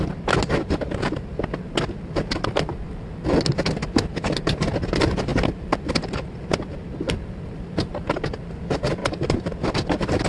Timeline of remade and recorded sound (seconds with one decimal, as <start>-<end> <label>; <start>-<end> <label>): 0.0-9.0 recorded; 9.0-9.5 remade; 9.5-10.3 recorded